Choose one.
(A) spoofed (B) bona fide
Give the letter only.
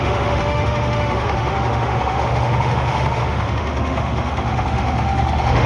A